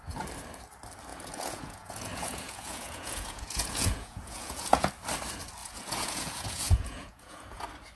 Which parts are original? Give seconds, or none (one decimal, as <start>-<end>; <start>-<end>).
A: 0.0-1.1; 4.9-5.6; 7.6-8.0